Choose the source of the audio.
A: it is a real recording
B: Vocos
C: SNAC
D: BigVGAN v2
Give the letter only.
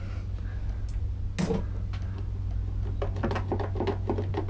A